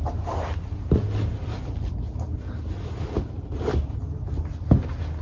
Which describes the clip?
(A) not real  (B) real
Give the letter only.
B